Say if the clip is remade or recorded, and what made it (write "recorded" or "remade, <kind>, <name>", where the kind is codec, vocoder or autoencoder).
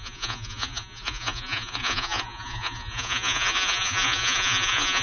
remade, vocoder, Vocos